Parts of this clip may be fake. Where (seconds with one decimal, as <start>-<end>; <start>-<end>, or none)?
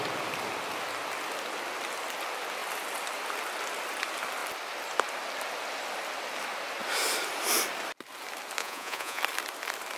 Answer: 8.6-9.2